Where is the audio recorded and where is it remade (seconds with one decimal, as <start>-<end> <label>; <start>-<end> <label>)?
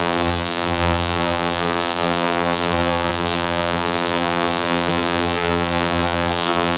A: 0.0-6.8 remade